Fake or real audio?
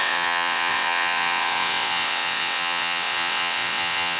fake